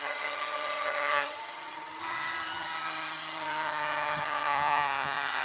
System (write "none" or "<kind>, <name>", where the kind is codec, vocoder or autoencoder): vocoder, HiFi-GAN